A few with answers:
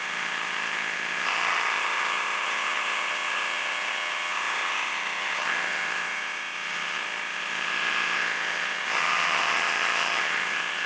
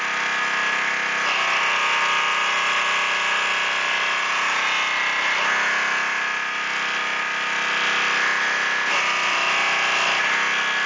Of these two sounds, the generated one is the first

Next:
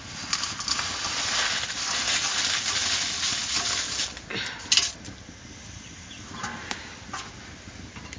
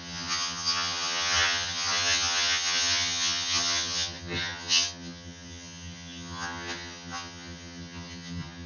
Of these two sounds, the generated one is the second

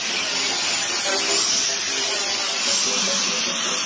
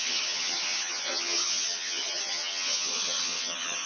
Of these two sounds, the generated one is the second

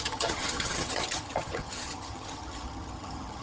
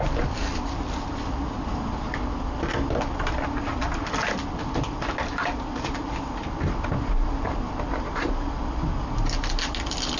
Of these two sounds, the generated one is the first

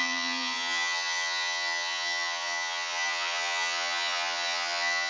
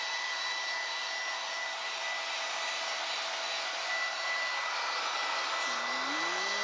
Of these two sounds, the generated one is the first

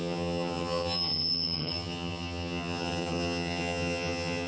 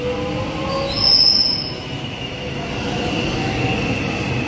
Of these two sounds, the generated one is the first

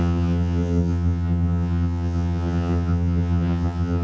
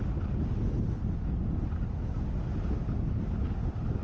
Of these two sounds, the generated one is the first